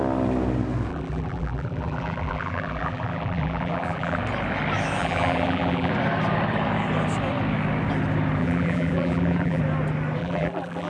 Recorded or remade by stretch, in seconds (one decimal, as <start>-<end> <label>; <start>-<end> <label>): 0.0-0.9 recorded; 0.9-4.2 remade; 4.2-5.0 recorded; 5.0-5.9 remade; 5.9-8.4 recorded; 8.4-9.6 remade; 9.6-10.2 recorded; 10.2-10.9 remade